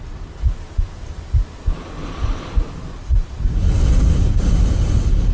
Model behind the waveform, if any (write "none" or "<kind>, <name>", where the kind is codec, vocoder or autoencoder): none